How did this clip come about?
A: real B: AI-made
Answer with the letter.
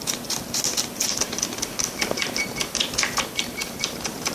A